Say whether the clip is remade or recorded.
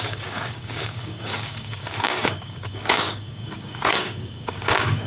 remade